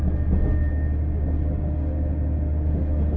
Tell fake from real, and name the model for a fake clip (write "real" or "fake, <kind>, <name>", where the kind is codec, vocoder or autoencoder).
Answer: real